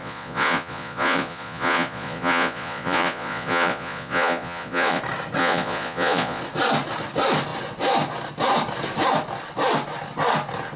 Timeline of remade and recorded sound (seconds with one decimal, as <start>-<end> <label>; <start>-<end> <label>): 0.0-5.0 remade; 5.0-5.4 recorded; 5.4-6.4 remade; 6.4-10.8 recorded